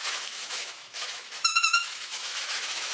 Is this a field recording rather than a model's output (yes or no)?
no